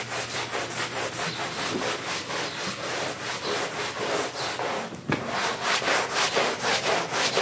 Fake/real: real